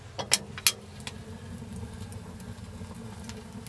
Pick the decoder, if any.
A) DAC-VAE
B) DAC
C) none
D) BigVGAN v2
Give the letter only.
C